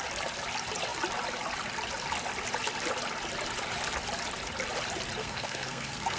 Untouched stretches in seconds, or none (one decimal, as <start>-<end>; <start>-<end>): 0.0-5.2